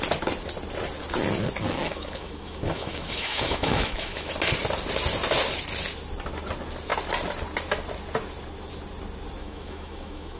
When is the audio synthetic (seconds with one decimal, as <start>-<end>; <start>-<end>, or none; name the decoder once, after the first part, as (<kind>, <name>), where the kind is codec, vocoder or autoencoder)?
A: 1.8-4.3 (autoencoder, DAC-VAE); 9.4-10.4